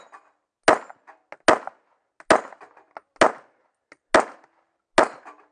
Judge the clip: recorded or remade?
recorded